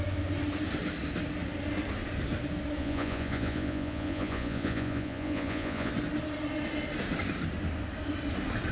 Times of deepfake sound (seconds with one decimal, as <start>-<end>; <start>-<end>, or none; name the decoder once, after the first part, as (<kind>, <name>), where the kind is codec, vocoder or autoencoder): 2.8-5.9 (vocoder, Vocos)